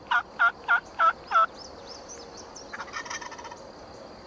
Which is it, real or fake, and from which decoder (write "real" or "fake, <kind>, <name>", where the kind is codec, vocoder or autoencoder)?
real